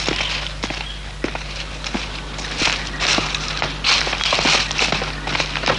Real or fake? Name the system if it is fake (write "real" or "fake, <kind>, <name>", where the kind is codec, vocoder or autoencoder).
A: real